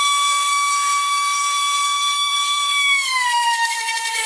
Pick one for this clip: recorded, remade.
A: remade